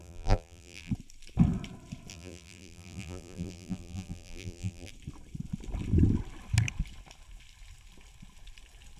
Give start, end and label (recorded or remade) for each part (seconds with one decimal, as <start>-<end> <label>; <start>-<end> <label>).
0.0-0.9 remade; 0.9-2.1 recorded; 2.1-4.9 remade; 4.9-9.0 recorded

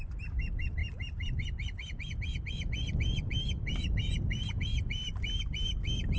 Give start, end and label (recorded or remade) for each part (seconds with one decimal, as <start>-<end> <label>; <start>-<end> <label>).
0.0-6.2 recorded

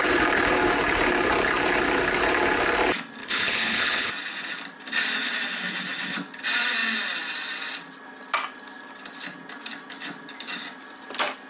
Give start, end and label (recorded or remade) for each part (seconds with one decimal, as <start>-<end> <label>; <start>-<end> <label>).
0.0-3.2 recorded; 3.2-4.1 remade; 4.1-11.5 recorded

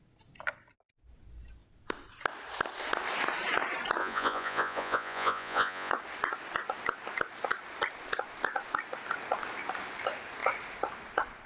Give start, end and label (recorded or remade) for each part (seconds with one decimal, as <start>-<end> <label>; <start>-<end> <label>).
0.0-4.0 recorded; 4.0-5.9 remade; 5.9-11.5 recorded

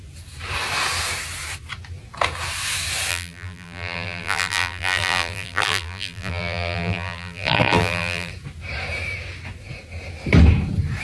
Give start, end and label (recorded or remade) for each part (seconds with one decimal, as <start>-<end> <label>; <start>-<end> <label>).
0.0-3.1 recorded; 3.1-8.3 remade; 8.3-11.0 recorded

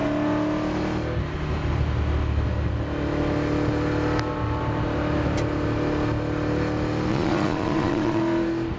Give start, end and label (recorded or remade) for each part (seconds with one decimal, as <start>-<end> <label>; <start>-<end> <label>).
0.0-7.1 recorded; 7.1-8.2 remade; 8.2-8.8 recorded

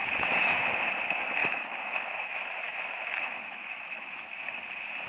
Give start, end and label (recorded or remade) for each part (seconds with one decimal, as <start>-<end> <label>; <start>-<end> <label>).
0.0-0.7 remade; 0.7-1.4 recorded; 1.4-4.4 remade; 4.4-5.1 recorded